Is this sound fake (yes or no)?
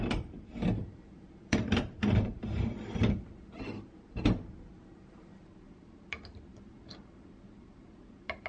yes